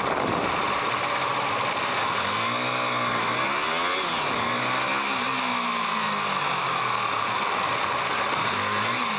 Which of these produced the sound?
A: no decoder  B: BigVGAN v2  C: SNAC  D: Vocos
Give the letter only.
A